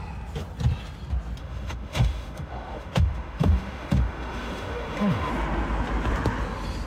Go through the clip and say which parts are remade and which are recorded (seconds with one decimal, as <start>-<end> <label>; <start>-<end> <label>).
0.0-1.4 recorded; 1.4-5.3 remade; 5.3-6.9 recorded